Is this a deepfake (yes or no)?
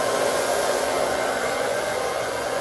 yes